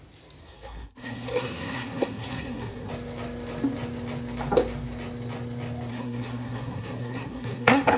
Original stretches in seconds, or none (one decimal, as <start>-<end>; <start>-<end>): 0.0-0.4; 2.9-5.9